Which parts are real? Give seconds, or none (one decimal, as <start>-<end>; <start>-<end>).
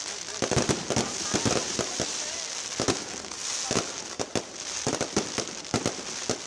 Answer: 0.0-6.5